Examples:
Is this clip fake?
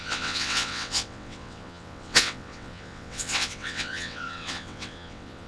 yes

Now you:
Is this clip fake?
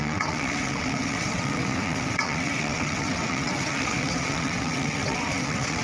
yes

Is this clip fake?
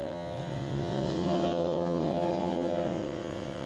yes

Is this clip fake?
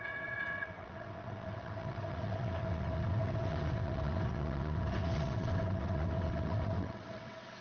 yes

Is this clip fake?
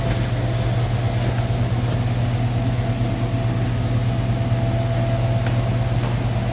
no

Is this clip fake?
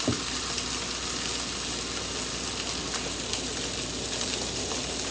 no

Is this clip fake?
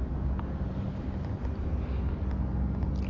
no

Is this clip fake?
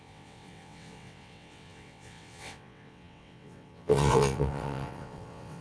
yes